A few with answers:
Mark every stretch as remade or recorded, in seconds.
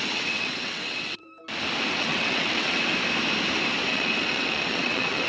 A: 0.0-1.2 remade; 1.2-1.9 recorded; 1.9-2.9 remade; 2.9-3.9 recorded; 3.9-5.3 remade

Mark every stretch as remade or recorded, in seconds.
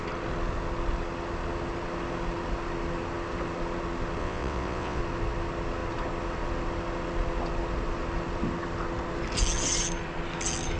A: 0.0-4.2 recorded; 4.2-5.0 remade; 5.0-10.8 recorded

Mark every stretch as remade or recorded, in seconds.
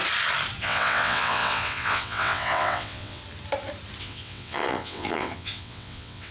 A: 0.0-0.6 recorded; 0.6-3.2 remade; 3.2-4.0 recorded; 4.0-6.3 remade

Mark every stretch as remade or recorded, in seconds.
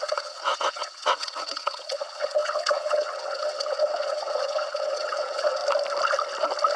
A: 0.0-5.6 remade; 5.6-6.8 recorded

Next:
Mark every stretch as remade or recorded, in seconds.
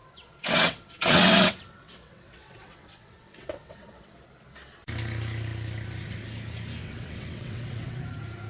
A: 0.0-4.2 remade; 4.2-6.8 recorded; 6.8-8.0 remade; 8.0-8.5 recorded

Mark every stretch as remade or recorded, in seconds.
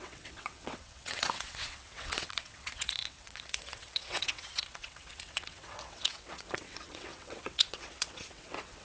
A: 0.0-8.8 remade